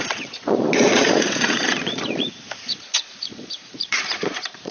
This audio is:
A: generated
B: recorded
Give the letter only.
A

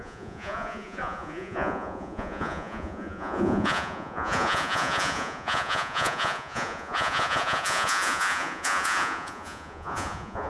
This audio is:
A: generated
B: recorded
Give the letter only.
A